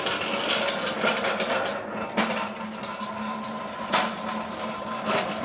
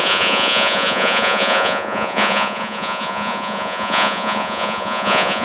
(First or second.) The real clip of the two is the first